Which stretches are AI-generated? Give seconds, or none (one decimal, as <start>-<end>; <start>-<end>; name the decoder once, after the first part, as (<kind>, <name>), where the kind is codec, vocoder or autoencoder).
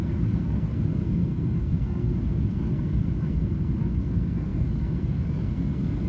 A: 0.0-6.1 (codec, SNAC)